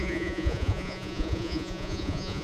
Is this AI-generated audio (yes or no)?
yes